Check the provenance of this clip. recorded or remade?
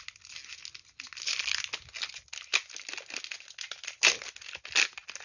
recorded